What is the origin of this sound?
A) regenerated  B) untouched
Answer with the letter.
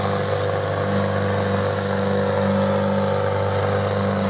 B